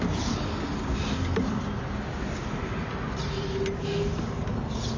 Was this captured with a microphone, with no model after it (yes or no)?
yes